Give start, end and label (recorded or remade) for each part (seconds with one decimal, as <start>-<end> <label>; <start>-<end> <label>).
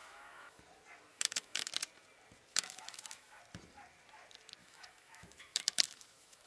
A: 0.0-0.6 remade; 0.6-1.1 recorded; 1.1-1.7 remade; 1.7-2.5 recorded; 2.5-3.4 remade; 3.4-4.6 recorded; 4.6-6.5 remade